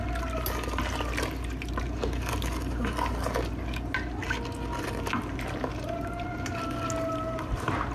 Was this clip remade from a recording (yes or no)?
no